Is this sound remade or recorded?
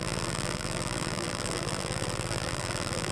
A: remade